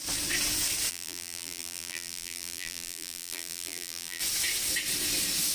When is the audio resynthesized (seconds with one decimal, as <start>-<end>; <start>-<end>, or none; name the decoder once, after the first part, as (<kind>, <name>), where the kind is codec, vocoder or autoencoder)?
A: 0.9-4.2 (vocoder, BigVGAN v2)